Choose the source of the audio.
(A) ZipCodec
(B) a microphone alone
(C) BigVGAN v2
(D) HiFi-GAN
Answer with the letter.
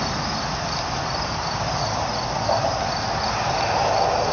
B